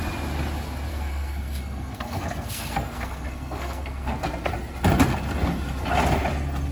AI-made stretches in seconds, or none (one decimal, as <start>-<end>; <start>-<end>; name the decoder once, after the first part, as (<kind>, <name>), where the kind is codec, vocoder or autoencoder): 0.9-4.5 (codec, SNAC)